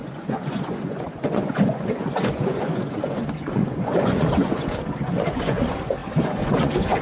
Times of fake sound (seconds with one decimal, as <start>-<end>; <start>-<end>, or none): 0.0-7.0

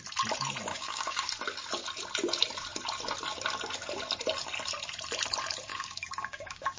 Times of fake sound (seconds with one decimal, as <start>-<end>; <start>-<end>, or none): 0.7-1.3; 5.7-6.8

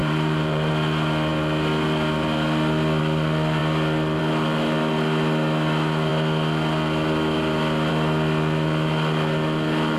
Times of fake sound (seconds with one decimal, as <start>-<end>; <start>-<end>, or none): 0.0-0.7

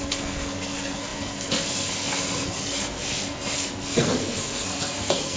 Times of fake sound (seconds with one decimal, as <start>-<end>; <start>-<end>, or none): 0.0-5.4

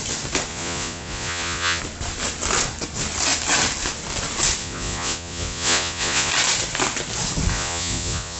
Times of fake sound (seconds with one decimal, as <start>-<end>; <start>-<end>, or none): 0.5-1.8; 4.6-6.3; 7.5-8.4

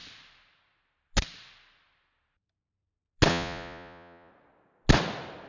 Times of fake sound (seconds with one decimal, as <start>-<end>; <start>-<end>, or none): 3.3-4.3

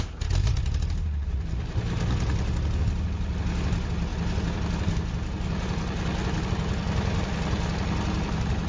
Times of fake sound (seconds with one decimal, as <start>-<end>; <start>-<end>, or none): none

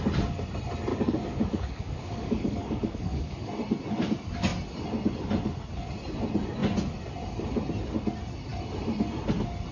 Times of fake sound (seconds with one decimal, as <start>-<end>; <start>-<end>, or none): 0.9-3.5